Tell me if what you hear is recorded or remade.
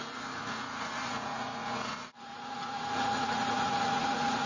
remade